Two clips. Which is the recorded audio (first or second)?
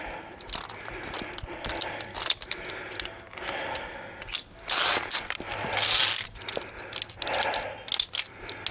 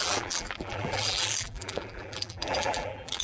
first